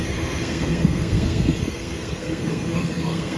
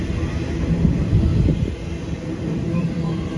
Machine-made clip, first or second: first